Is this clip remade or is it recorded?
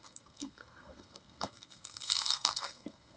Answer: remade